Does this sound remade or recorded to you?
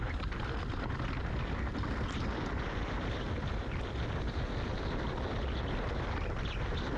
recorded